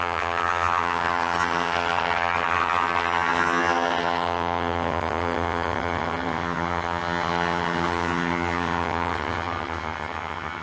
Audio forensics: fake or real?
fake